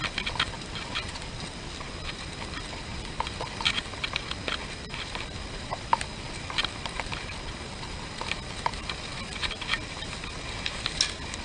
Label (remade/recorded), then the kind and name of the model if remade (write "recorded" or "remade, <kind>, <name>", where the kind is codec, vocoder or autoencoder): recorded